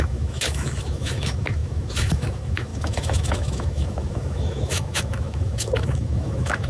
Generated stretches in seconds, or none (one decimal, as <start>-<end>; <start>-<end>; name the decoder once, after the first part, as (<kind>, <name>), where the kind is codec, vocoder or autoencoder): 0.0-6.7 (autoencoder, DAC-VAE)